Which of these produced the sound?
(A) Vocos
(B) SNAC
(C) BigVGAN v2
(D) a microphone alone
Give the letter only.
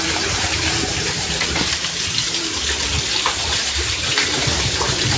C